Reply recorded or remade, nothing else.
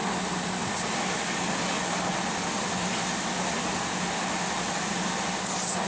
recorded